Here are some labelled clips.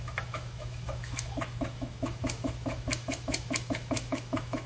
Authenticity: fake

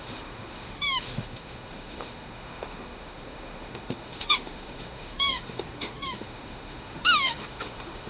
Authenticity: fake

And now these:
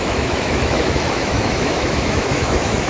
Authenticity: fake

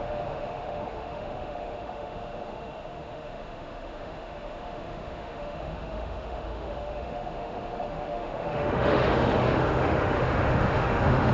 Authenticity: fake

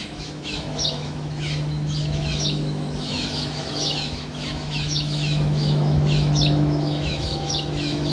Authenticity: fake